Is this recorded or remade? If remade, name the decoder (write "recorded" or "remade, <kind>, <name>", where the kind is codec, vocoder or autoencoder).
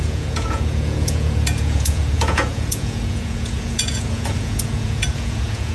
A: remade, vocoder, Vocos